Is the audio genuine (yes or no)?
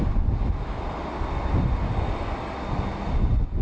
yes